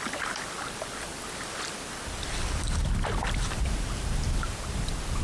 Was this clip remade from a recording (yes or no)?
no